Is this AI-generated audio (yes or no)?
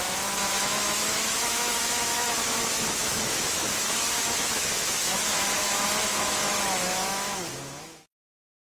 yes